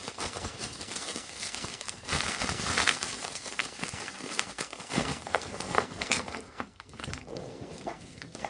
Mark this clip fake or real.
fake